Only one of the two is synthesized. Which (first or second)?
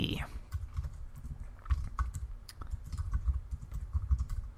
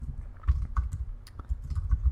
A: first